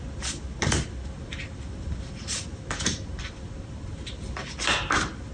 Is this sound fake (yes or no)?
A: no